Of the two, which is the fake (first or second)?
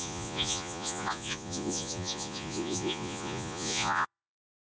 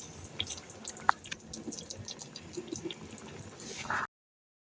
first